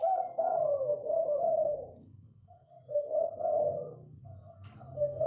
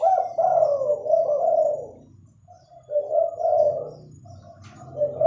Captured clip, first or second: second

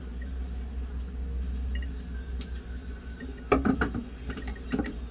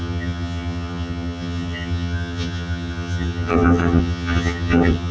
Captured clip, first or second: first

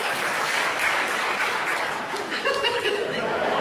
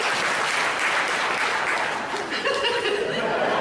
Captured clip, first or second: second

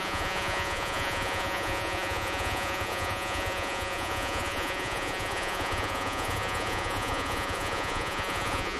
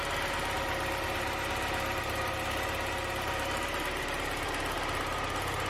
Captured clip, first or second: second